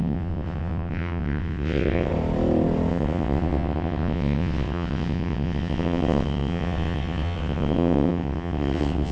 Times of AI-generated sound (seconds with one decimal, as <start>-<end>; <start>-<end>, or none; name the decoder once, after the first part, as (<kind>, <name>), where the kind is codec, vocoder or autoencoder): 0.0-2.1 (vocoder, WaveNeXt); 2.9-9.1